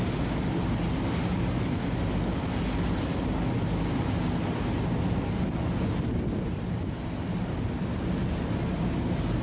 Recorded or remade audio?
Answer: recorded